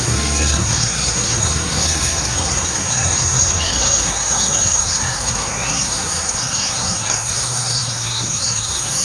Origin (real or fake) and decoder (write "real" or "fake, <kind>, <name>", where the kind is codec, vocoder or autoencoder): fake, codec, SNAC